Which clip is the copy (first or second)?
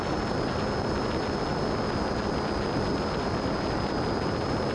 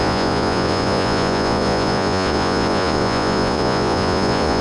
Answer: second